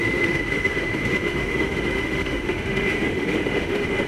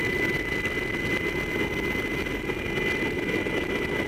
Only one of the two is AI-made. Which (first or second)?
first